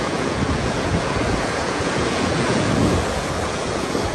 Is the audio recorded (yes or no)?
no